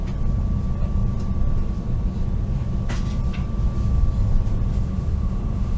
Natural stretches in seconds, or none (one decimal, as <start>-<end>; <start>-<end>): 0.0-4.7